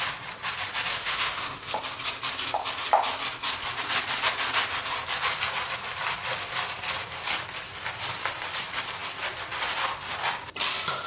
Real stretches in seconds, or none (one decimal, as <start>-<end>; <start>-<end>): 0.0-0.9; 1.8-11.1